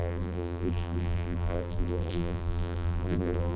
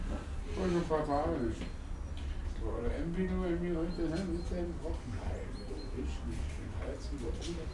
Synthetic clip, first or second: first